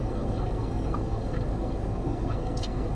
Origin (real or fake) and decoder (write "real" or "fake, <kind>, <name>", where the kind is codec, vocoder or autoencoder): fake, codec, SNAC